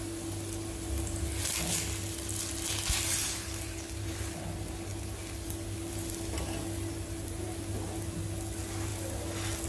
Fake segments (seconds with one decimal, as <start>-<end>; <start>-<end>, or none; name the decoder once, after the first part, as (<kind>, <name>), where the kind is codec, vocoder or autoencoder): none